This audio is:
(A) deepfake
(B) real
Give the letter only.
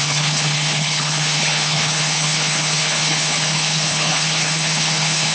A